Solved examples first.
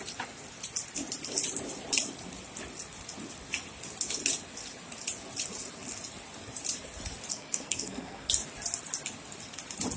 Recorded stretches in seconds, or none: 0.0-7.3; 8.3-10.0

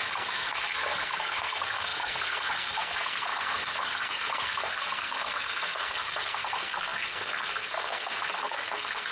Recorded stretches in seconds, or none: none

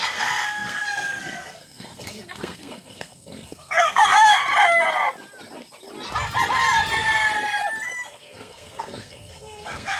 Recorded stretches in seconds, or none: 4.4-8.1

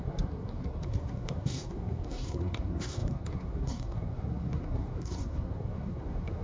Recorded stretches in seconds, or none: none

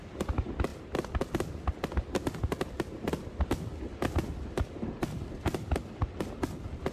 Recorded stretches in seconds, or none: 0.0-6.9